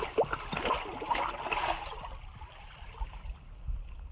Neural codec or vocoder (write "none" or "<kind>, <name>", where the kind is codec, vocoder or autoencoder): none